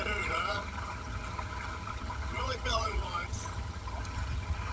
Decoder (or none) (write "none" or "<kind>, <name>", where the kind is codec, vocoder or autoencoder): vocoder, HiFi-GAN